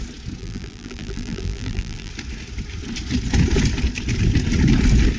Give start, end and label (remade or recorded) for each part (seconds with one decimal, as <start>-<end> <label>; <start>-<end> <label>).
0.0-0.4 recorded; 0.4-2.1 remade; 2.1-5.2 recorded